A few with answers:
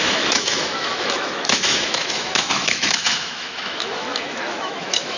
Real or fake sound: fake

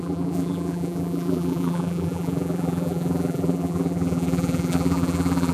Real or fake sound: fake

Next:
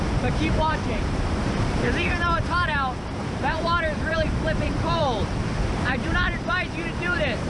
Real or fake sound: fake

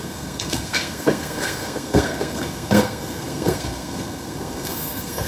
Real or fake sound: fake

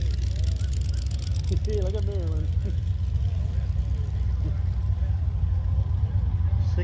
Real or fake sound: real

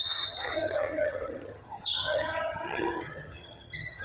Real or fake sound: fake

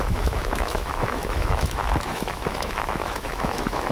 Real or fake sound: fake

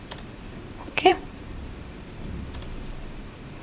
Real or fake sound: fake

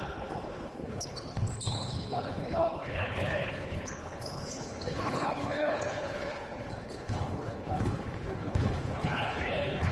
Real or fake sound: fake